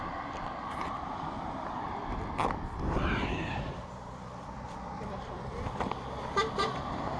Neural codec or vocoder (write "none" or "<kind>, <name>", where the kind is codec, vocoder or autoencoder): vocoder, BigVGAN v2